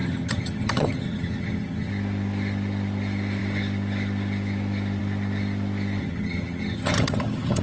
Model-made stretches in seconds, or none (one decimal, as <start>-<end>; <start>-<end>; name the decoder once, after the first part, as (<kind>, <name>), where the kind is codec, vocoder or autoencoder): 0.0-1.9 (vocoder, HiFi-GAN); 6.0-7.6